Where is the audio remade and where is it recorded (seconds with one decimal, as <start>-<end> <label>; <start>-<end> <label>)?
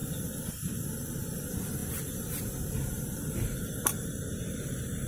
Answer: 0.0-0.5 recorded; 0.5-5.1 remade